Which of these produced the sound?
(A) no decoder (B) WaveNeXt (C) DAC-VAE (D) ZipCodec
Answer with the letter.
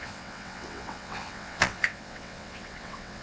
B